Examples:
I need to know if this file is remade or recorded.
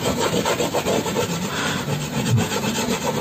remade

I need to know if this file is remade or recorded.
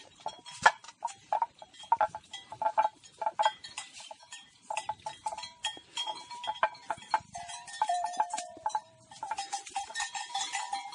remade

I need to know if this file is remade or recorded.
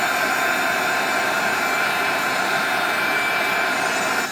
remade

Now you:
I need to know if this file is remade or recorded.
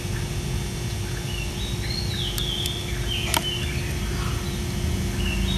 recorded